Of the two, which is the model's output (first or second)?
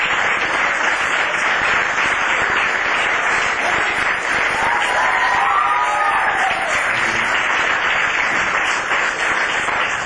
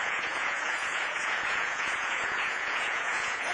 second